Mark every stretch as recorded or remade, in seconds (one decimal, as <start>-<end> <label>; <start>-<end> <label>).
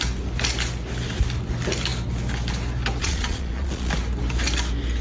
0.0-3.0 recorded; 3.0-3.9 remade; 3.9-5.0 recorded